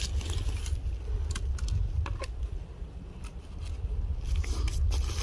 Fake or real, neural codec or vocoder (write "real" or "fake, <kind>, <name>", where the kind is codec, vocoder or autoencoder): real